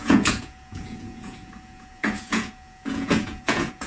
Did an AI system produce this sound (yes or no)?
yes